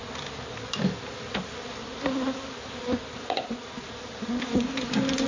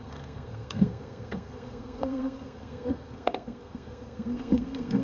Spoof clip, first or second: second